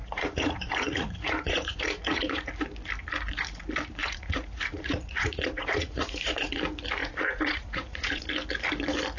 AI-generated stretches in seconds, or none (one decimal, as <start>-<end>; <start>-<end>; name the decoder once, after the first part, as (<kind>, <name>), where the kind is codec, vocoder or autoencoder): 0.0-2.5 (vocoder, Vocos); 4.0-6.6; 7.0-8.2